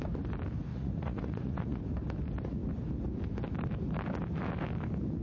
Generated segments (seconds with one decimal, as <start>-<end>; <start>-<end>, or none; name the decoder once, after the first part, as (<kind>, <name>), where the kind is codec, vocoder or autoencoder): 0.7-1.8 (vocoder, Vocos)